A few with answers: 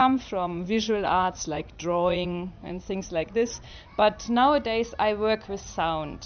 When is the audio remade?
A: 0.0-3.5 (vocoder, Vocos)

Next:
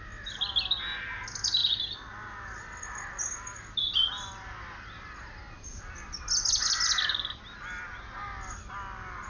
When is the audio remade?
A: none

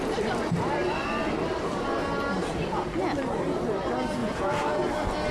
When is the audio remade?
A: 4.2-4.8 (vocoder, Vocos)

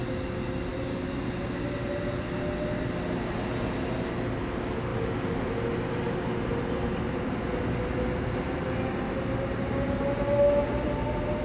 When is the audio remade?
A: none